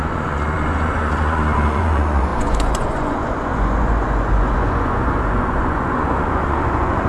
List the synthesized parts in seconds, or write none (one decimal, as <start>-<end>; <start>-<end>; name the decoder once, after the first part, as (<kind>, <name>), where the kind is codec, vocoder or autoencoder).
0.0-7.1 (vocoder, Vocos)

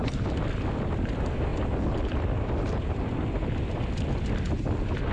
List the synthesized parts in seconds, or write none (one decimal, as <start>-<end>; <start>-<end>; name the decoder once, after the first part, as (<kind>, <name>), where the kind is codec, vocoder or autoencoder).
none

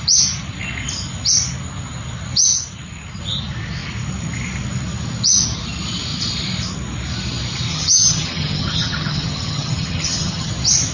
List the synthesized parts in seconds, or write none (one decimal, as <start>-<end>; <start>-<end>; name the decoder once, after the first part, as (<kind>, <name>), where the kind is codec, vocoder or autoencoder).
7.7-10.5 (vocoder, HiFi-GAN)